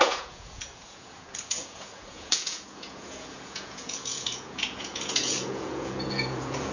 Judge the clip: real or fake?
fake